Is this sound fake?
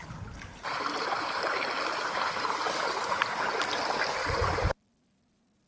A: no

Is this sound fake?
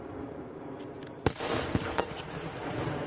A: no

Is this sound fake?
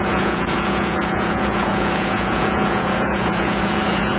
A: yes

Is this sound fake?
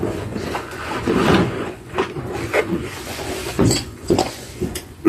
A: yes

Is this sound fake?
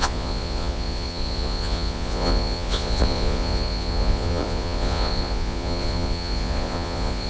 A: yes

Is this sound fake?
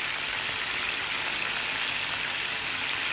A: no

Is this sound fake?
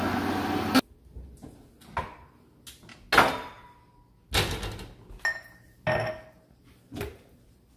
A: no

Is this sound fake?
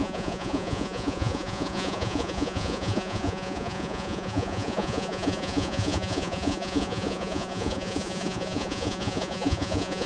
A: yes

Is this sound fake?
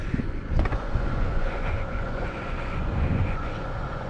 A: yes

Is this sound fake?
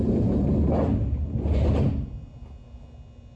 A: no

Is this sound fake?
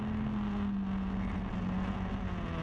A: no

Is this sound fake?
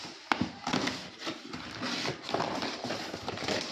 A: no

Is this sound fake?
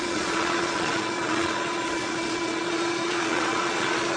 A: yes